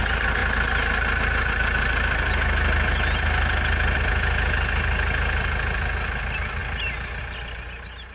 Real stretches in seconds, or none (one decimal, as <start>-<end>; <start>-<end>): 0.0-8.1